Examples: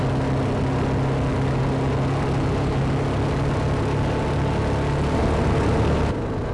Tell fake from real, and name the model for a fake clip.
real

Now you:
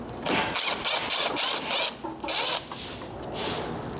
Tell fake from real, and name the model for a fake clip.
real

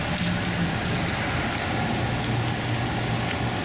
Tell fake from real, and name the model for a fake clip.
real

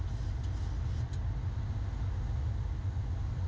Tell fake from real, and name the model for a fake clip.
real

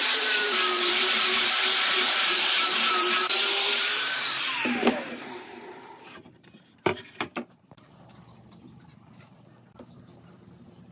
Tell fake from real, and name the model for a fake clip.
fake, vocoder, BigVGAN v2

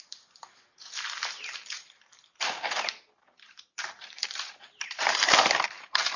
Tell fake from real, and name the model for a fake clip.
fake, vocoder, BigVGAN v2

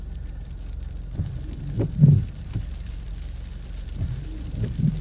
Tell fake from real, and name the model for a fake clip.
fake, vocoder, BigVGAN v2